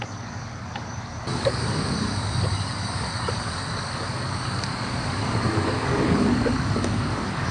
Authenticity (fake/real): fake